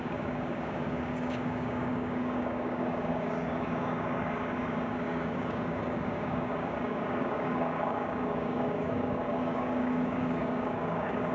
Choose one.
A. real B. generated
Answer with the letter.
B